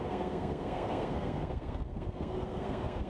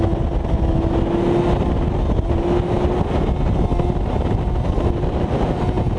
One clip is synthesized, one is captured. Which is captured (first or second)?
second